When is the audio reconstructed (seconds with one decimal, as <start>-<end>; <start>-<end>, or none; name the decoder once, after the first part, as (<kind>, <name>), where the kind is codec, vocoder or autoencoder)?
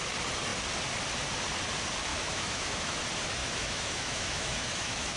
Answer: 2.1-3.0 (autoencoder, DAC-VAE); 3.4-5.2